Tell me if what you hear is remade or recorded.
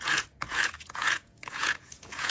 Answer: remade